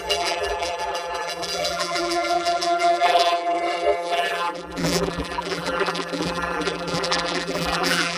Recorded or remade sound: remade